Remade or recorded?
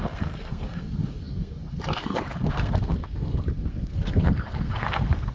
remade